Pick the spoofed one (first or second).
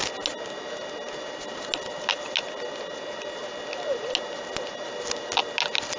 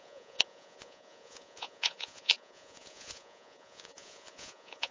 second